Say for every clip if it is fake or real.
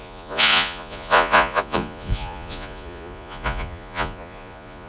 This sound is fake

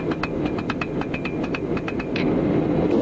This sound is real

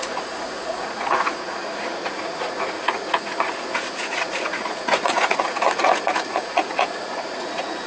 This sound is fake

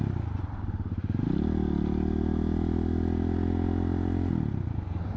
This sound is real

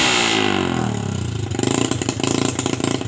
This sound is real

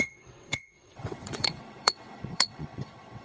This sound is fake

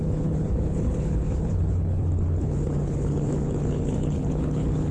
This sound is fake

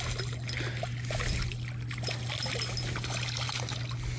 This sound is real